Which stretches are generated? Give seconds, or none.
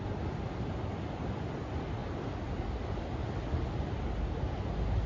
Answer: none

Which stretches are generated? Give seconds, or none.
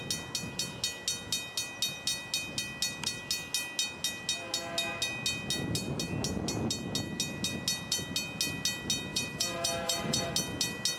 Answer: 9.1-10.3 (vocoder, BigVGAN v2)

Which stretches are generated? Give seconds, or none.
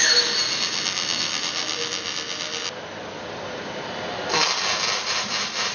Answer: 0.0-0.4 (vocoder, BigVGAN v2); 1.2-1.6; 5.0-5.7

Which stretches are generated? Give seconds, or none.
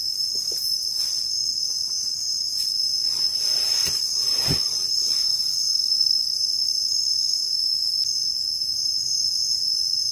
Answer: 5.8-7.1 (vocoder, BigVGAN v2)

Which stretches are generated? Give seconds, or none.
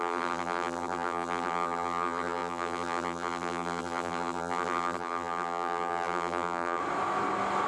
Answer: 0.0-6.8 (vocoder, BigVGAN v2)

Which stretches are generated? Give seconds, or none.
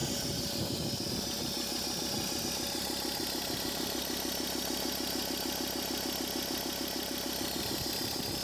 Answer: none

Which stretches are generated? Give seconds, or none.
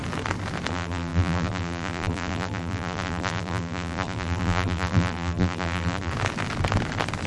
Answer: 0.7-6.1 (vocoder, BigVGAN v2)